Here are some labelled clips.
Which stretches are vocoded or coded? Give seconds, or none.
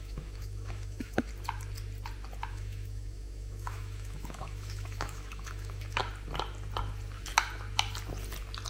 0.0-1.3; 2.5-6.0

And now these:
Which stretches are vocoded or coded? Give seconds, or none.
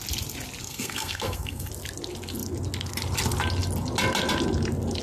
0.6-1.7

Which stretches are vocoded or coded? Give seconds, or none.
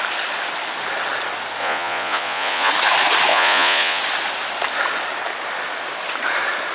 1.6-2.7; 3.3-4.0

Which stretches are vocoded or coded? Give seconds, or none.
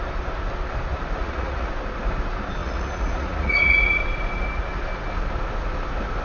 1.2-1.7; 2.6-4.0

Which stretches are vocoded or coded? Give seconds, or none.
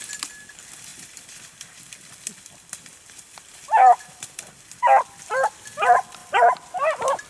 0.9-5.3; 6.2-7.3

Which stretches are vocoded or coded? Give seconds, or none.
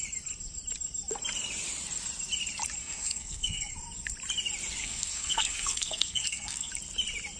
2.8-3.7; 4.8-6.7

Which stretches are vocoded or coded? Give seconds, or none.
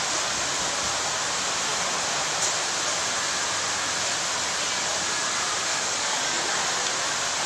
5.7-6.4